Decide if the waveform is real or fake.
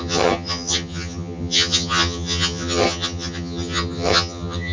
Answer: fake